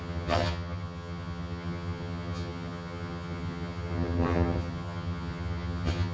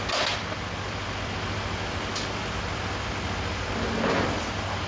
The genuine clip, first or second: second